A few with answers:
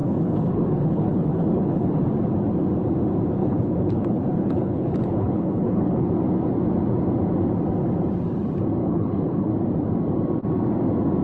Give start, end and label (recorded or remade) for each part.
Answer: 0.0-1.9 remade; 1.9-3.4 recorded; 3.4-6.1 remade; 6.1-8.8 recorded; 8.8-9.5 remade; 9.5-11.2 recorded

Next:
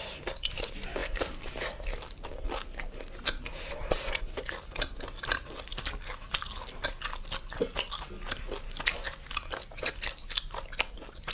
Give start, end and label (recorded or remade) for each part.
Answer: 0.0-11.3 recorded

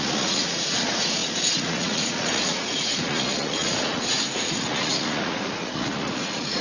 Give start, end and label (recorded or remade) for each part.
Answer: 0.0-6.6 remade

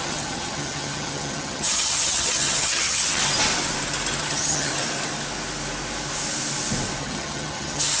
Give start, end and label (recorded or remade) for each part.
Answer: 0.0-3.2 remade; 3.2-4.2 recorded; 4.2-4.7 remade; 4.7-7.0 recorded; 7.0-8.0 remade

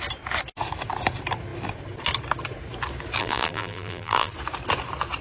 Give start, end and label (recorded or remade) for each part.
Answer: 0.0-3.2 recorded; 3.2-4.3 remade; 4.3-5.2 recorded

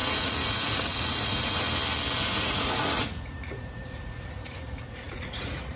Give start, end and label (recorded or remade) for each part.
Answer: 0.0-1.6 remade; 1.6-2.2 recorded; 2.2-5.8 remade

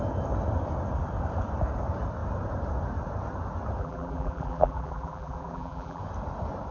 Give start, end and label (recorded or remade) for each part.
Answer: 0.0-3.8 recorded; 3.8-6.0 remade; 6.0-6.7 recorded